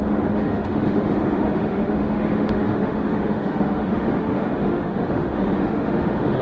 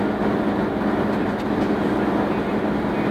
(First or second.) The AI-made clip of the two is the first